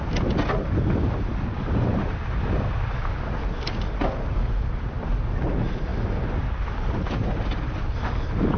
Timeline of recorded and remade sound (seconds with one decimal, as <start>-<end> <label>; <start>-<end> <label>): 0.0-8.6 recorded